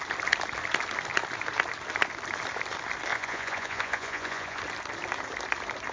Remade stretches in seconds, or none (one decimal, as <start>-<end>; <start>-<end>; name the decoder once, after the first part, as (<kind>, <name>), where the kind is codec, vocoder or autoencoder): 3.1-4.6 (vocoder, Vocos)